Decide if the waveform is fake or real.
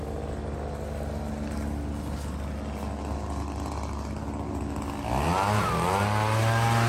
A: real